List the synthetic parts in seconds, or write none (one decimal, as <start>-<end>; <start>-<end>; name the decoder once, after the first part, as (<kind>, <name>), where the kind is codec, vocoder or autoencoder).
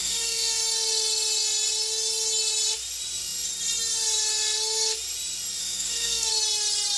0.0-0.6 (codec, SNAC); 5.6-6.3